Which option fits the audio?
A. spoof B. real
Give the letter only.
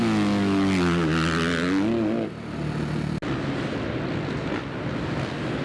B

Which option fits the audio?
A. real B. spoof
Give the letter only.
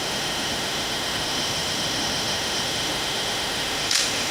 B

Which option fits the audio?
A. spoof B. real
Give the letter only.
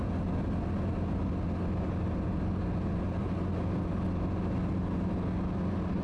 B